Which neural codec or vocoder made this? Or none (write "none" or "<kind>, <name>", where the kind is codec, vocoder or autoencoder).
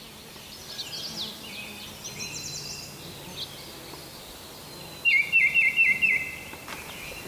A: none